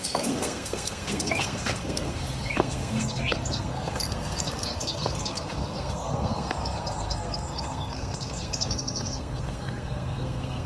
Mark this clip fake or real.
fake